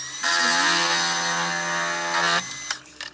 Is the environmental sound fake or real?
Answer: real